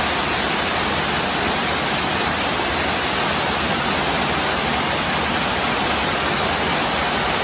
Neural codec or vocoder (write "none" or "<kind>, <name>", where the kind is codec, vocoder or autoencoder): none